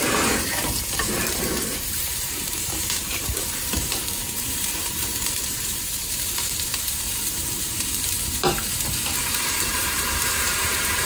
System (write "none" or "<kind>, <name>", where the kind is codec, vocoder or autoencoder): vocoder, BigVGAN v2